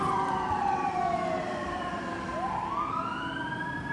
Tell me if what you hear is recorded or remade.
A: remade